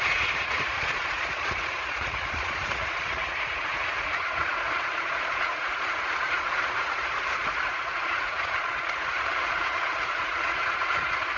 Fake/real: fake